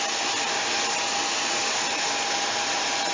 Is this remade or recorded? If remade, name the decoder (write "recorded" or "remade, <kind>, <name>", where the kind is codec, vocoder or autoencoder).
recorded